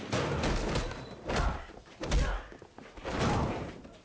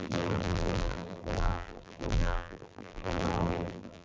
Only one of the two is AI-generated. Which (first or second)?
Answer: second